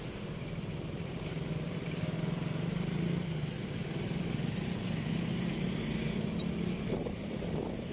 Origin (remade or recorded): recorded